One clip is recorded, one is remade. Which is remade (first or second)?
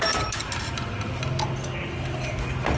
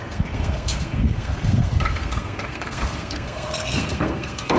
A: second